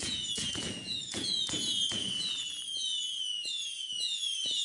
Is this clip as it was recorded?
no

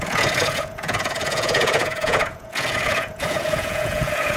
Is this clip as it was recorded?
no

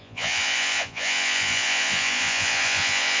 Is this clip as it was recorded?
no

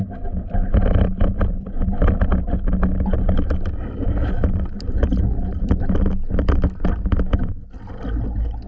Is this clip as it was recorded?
yes